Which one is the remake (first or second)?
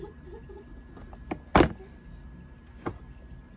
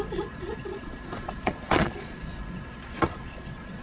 second